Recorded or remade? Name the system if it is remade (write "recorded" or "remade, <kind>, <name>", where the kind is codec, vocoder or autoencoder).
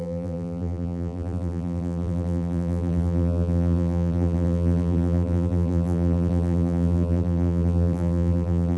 remade, vocoder, BigVGAN v2